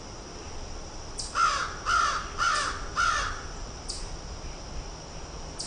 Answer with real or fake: real